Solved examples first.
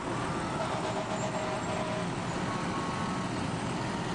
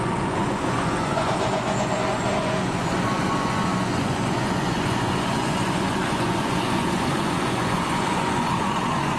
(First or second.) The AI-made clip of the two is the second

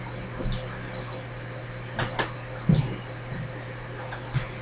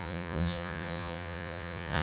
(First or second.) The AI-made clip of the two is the second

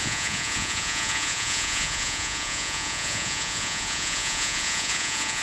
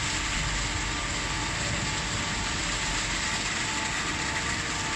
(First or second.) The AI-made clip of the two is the first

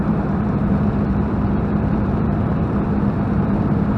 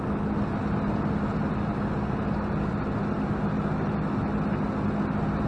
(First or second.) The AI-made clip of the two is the first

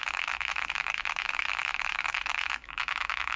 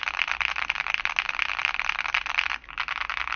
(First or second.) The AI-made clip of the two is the first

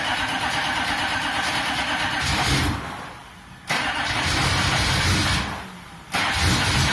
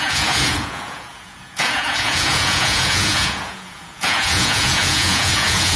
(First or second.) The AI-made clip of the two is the second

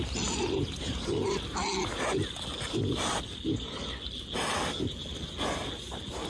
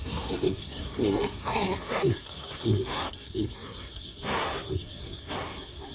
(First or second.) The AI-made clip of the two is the second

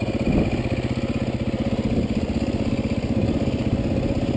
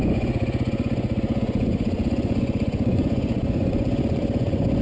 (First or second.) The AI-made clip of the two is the second